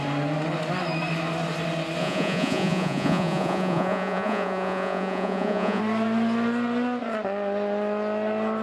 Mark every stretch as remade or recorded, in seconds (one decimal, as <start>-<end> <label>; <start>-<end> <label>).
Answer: 0.0-2.0 recorded; 2.0-5.8 remade; 5.8-8.6 recorded